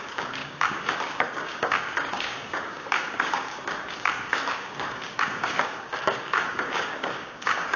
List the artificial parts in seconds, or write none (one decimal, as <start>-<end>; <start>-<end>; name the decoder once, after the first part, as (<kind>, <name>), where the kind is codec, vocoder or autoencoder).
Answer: 0.0-7.8 (codec, DAC)

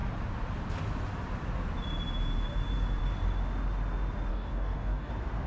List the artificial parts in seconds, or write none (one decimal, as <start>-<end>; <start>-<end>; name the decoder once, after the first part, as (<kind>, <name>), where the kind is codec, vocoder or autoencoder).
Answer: 4.3-5.1 (codec, DAC)

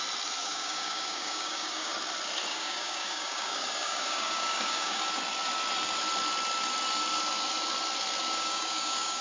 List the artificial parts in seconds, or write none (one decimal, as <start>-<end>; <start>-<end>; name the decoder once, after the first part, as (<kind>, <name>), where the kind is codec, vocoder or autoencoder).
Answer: 0.4-1.9 (codec, DAC); 2.5-5.0; 8.2-9.2

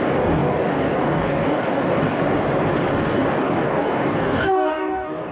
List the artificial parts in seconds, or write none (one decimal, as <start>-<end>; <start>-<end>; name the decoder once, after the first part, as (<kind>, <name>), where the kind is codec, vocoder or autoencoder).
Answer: 0.0-2.2 (codec, DAC); 2.9-5.3

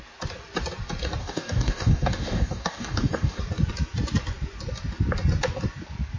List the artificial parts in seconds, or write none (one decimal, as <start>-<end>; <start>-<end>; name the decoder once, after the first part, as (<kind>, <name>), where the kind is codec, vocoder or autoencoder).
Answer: 1.2-3.4 (codec, DAC)

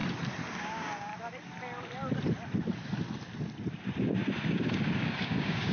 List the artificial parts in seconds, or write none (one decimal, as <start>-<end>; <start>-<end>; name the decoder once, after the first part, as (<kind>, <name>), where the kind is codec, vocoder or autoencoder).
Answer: 0.6-1.1 (codec, DAC); 4.5-5.7

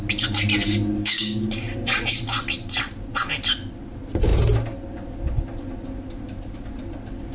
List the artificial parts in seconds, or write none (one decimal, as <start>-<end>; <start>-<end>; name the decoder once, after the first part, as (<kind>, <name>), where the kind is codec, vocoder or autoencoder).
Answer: 1.0-1.5 (codec, DAC)